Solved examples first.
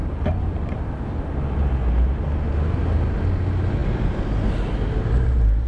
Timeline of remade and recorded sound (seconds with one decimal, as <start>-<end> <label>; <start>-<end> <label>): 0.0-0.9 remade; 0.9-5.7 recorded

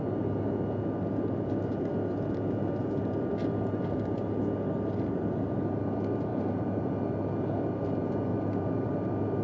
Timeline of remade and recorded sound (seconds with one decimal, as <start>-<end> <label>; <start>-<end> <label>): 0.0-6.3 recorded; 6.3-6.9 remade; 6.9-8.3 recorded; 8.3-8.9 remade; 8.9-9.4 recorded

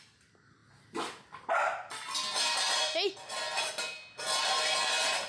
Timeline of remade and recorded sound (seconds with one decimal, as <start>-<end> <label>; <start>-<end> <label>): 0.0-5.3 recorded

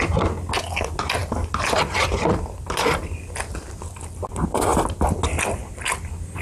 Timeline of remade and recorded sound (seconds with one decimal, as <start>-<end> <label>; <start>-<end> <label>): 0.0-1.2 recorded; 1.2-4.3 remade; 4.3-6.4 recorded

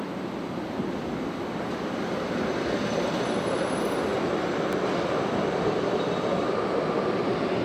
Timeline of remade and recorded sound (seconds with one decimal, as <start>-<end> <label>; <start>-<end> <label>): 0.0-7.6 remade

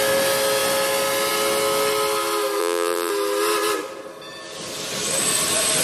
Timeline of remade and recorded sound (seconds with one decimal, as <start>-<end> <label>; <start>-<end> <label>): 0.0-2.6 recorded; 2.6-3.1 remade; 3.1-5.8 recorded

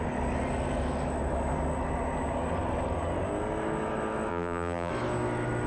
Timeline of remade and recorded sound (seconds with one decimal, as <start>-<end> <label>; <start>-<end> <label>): 0.0-4.3 recorded; 4.3-4.9 remade; 4.9-5.7 recorded